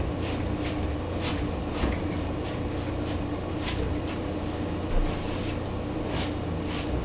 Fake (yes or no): no